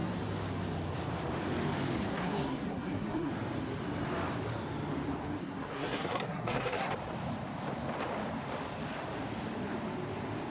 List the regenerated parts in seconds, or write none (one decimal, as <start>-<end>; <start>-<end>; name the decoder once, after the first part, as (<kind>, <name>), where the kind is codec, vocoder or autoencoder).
2.1-3.3 (codec, SNAC); 5.4-6.9